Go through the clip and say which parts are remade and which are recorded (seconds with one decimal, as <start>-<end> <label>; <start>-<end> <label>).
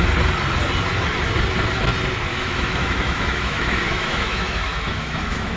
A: 0.0-2.3 recorded; 2.3-5.6 remade